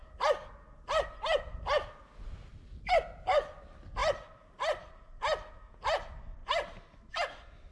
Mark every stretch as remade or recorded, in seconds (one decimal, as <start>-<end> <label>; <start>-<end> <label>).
0.0-7.7 recorded